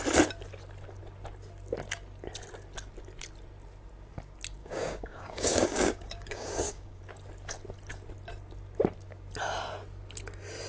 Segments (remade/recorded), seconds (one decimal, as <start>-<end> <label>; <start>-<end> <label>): 0.0-4.6 recorded; 4.6-7.0 remade; 7.0-10.7 recorded